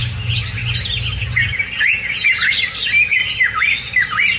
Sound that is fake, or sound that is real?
real